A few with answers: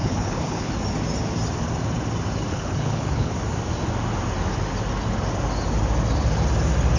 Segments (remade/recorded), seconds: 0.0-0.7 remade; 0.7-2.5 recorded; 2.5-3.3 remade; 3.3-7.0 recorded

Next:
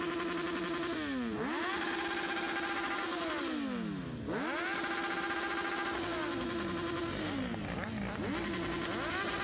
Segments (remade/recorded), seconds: 0.0-9.4 recorded

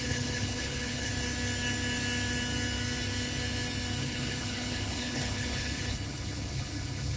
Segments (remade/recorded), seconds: 0.0-1.1 remade; 1.1-4.0 recorded; 4.0-7.2 remade